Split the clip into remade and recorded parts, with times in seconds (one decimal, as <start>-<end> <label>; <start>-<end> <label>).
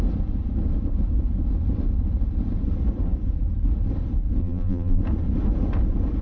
0.0-4.4 recorded; 4.4-5.0 remade; 5.0-6.2 recorded